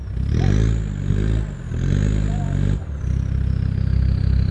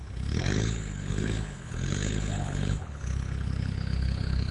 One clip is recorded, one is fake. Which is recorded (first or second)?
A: first